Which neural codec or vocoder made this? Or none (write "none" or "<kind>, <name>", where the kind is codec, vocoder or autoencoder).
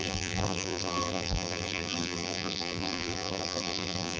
vocoder, BigVGAN v2